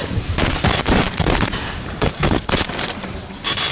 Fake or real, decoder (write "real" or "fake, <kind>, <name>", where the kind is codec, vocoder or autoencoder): fake, vocoder, BigVGAN v2